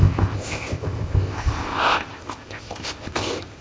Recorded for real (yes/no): no